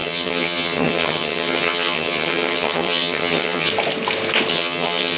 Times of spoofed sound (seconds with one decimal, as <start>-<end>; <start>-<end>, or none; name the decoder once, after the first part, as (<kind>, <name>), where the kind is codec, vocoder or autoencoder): 0.0-3.7 (vocoder, HiFi-GAN); 4.5-5.2